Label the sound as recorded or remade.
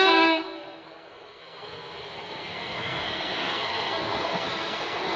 remade